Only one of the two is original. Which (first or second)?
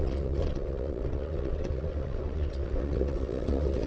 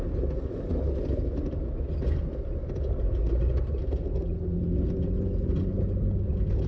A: second